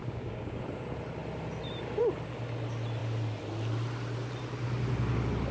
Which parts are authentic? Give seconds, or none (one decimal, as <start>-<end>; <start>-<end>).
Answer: 0.6-5.5